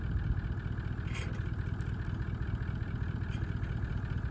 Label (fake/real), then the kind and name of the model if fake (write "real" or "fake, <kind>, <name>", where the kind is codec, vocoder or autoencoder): real